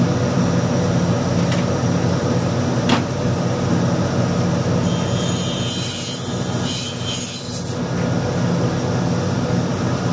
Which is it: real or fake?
real